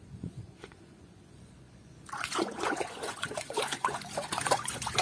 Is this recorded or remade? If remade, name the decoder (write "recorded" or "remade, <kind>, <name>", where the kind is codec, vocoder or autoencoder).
remade, vocoder, Vocos